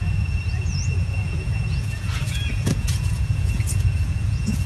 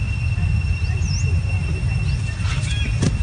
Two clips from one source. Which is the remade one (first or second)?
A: first